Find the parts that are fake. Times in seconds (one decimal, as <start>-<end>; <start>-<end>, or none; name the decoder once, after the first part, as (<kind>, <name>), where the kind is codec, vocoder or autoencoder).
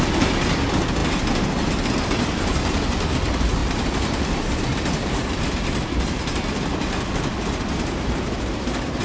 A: none